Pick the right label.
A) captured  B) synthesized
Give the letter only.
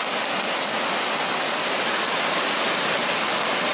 A